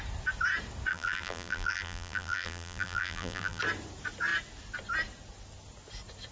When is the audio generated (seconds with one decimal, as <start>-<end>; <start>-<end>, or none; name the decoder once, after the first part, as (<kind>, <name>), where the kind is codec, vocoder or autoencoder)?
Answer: 0.9-3.6 (vocoder, BigVGAN v2)